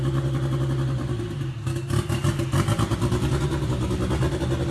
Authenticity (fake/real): real